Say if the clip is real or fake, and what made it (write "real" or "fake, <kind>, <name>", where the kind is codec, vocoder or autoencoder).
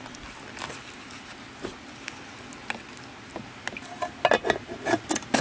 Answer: real